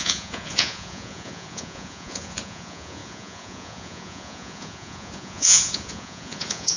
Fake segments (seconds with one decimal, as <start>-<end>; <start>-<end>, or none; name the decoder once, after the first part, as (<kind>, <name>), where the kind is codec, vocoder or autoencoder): 0.0-6.8 (vocoder, Vocos)